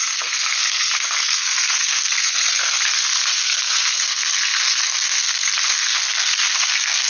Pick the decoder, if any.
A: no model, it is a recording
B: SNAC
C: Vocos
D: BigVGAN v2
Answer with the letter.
B